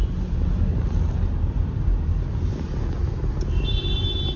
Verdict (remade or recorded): recorded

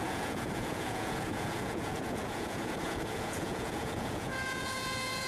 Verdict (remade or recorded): remade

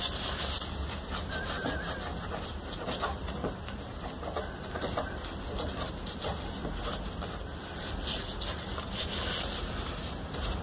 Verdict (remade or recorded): recorded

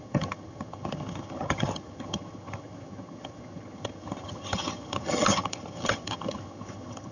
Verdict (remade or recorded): remade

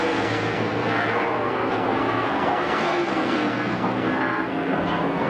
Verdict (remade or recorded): remade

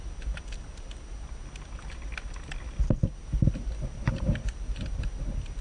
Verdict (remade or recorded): recorded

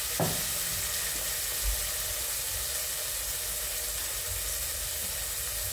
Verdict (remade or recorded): recorded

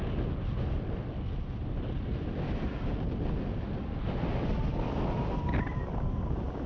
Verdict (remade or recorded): recorded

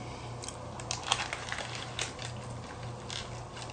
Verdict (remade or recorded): recorded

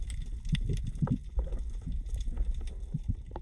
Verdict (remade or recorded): recorded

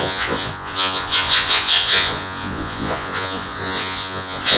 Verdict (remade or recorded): remade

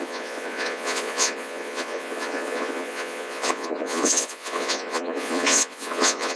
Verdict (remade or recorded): remade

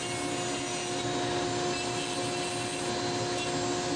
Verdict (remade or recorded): recorded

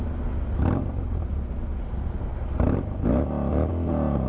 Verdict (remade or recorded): recorded